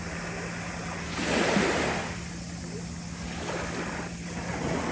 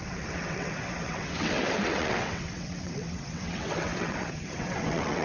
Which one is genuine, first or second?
first